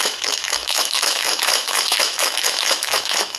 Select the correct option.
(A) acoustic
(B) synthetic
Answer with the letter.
B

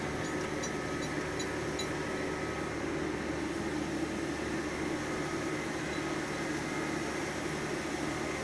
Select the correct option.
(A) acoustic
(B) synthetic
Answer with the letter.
A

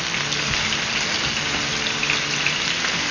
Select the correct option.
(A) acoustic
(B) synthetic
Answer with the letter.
A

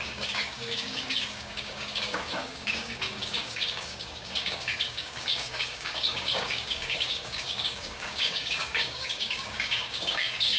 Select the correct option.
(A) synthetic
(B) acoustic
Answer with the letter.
A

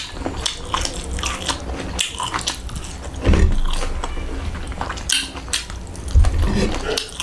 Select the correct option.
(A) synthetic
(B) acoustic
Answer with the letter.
B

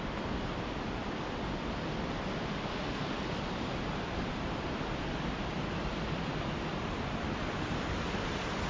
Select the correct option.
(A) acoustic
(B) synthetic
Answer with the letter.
A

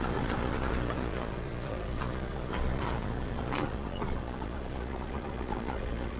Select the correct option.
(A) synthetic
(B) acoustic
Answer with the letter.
A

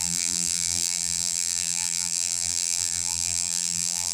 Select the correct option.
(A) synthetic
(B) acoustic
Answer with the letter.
A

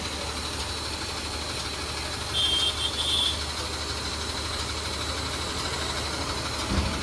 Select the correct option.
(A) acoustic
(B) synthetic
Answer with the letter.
A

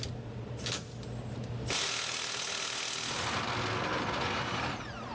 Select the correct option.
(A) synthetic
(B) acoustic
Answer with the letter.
B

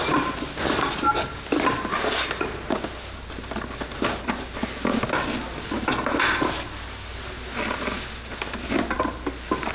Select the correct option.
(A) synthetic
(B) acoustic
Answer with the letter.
B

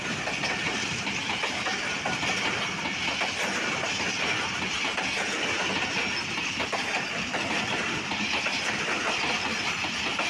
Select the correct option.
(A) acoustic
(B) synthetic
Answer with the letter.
A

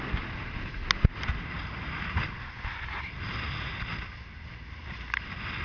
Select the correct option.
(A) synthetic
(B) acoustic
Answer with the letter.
B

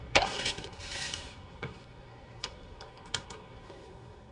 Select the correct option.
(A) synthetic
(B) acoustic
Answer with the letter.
A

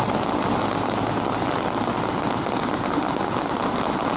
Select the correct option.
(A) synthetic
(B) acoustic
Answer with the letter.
B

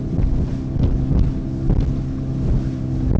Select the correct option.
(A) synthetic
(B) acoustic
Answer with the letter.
B